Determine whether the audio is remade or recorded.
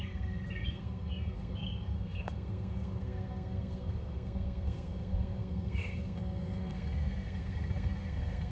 remade